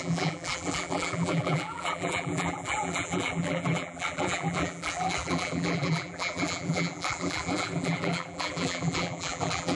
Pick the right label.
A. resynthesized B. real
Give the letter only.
A